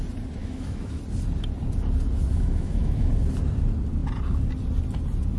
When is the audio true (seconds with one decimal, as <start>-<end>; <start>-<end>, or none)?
0.0-0.4; 1.0-2.3; 3.1-5.4